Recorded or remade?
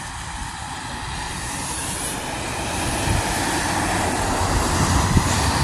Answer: remade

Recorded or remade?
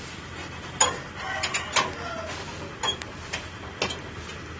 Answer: recorded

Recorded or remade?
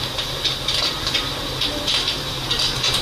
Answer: remade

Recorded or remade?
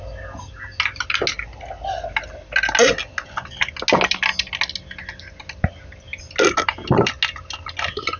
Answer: recorded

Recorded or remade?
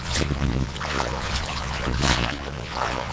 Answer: remade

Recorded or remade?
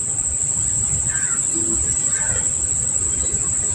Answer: recorded